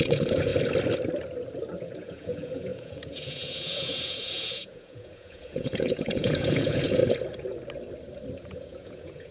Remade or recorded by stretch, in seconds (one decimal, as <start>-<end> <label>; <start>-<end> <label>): 0.0-0.5 remade; 0.5-1.8 recorded; 1.8-7.0 remade; 7.0-8.4 recorded; 8.4-9.3 remade